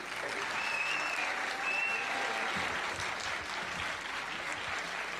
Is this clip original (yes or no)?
yes